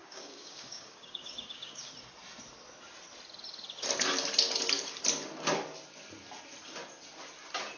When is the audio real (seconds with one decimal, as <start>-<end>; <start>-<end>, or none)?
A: 1.9-7.8